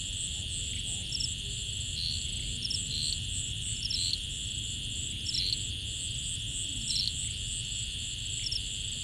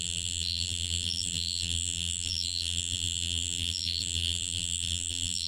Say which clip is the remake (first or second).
second